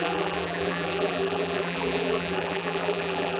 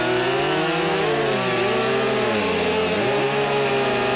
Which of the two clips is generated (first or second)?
first